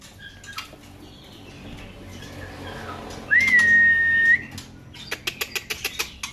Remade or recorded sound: recorded